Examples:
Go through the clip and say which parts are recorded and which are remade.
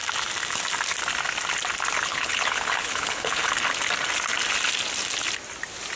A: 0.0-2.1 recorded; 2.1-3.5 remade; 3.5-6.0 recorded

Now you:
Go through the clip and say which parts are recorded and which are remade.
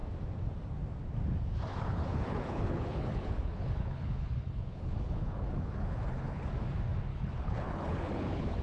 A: 0.0-1.7 recorded; 1.7-6.5 remade; 6.5-7.1 recorded; 7.1-8.6 remade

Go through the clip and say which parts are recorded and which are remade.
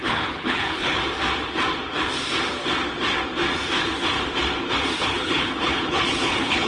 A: 0.0-1.0 remade; 1.0-5.0 recorded; 5.0-6.7 remade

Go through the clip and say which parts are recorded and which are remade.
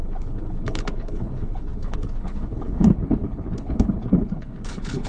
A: 0.0-5.1 remade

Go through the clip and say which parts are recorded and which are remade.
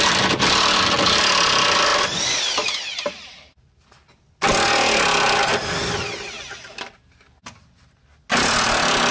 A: 0.0-9.1 recorded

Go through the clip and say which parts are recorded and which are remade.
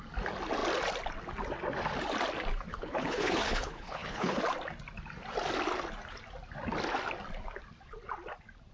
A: 0.0-2.7 recorded; 2.7-4.4 remade; 4.4-8.7 recorded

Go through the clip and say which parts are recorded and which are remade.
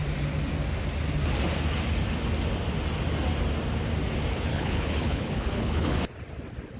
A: 0.0-4.5 recorded; 4.5-6.1 remade; 6.1-6.8 recorded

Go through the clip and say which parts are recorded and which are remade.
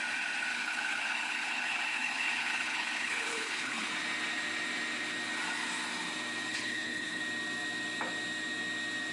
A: 0.0-0.5 recorded; 0.5-3.9 remade; 3.9-6.5 recorded; 6.5-7.2 remade; 7.2-9.1 recorded